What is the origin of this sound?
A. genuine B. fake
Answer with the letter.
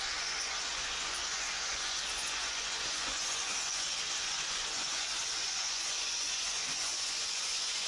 B